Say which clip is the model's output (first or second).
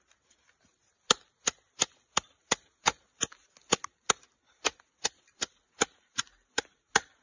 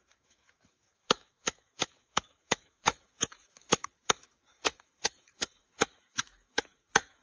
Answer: second